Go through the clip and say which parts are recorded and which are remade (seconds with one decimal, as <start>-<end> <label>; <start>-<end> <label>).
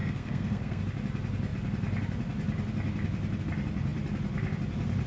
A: 0.0-0.8 remade; 0.8-5.1 recorded